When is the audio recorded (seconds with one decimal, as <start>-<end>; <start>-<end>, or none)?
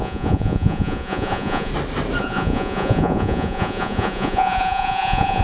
1.7-2.2